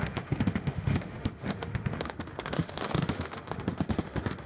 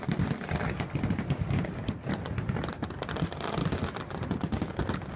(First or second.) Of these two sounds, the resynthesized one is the first